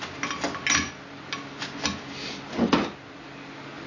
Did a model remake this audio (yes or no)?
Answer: no